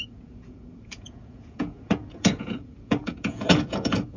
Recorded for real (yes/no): no